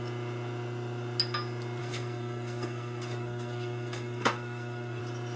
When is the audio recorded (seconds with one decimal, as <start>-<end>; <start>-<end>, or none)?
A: 0.0-1.8; 5.0-5.4